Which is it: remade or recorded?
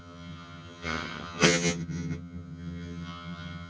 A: remade